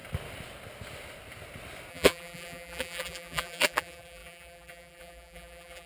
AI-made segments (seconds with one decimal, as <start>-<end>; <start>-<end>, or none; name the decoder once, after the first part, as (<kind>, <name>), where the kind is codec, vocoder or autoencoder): 1.9-5.9 (vocoder, BigVGAN v2)